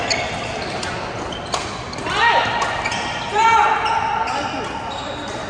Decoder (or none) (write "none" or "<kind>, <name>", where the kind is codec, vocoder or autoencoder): none